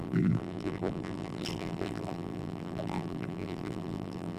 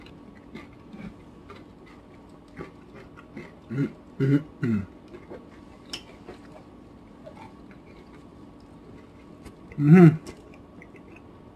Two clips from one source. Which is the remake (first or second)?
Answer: first